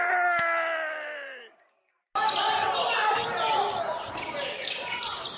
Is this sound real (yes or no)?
yes